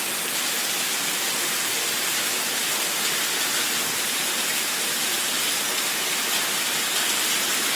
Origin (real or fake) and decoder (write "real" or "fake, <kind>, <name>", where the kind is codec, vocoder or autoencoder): real